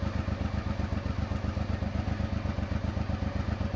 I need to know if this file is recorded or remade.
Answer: recorded